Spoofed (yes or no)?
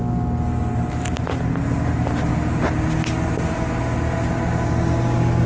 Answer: no